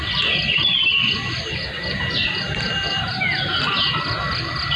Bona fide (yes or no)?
yes